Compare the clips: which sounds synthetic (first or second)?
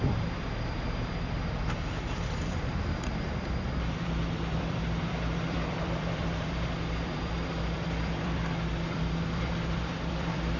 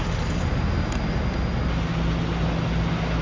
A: first